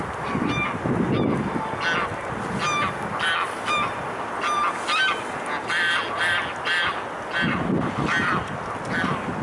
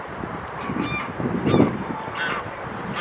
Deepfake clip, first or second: second